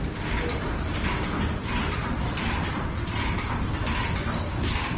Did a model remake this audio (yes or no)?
no